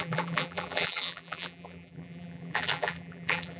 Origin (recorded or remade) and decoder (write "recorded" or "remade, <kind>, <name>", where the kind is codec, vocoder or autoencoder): remade, vocoder, BigVGAN v2